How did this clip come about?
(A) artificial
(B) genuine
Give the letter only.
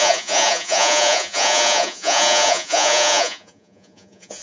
A